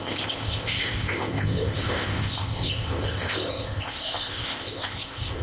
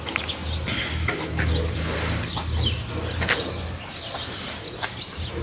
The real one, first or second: second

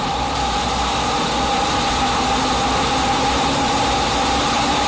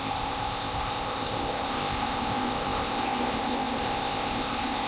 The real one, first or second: first